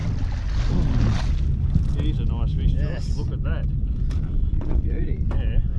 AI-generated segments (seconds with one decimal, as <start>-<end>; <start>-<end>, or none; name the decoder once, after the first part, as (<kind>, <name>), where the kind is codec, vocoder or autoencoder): 4.4-5.3 (vocoder, Vocos)

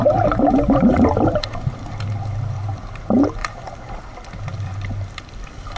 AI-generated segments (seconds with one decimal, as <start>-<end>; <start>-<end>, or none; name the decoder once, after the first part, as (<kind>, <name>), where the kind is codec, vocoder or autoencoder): 0.9-1.8 (vocoder, BigVGAN v2); 3.4-4.0

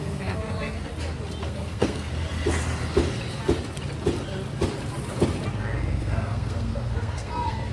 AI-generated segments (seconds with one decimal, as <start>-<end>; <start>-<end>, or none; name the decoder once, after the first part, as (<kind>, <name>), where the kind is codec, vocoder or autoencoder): 0.0-0.9 (codec, SNAC); 1.4-2.1; 5.5-7.7

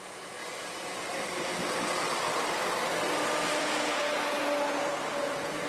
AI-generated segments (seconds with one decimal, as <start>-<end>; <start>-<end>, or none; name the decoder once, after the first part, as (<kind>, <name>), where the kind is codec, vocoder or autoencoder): 0.0-0.4 (vocoder, Vocos); 3.6-4.4; 5.2-5.7

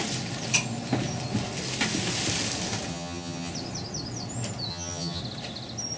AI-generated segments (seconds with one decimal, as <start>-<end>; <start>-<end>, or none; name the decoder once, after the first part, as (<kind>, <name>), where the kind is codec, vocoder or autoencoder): 2.9-3.5 (vocoder, HiFi-GAN); 4.7-5.2

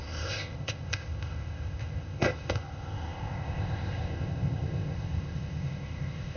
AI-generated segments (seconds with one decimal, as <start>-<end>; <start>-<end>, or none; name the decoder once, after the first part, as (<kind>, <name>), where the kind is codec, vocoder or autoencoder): 0.0-6.4 (codec, ZipCodec)

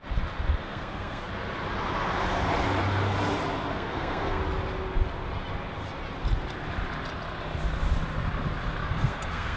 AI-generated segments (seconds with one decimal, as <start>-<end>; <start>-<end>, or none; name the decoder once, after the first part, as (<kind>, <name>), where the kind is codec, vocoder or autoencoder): 0.6-1.3 (codec, SNAC); 3.7-4.4; 8.8-9.6

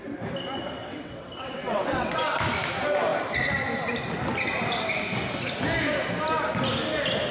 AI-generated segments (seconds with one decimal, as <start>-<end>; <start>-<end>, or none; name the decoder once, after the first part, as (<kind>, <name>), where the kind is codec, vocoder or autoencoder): 0.8-2.4 (vocoder, WaveNeXt)